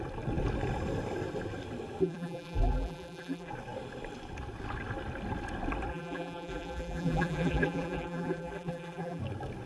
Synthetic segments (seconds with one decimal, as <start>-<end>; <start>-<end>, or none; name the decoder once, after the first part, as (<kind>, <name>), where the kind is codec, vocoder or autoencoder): 2.0-3.5 (vocoder, BigVGAN v2); 5.9-9.2